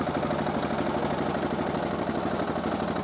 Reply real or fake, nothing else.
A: real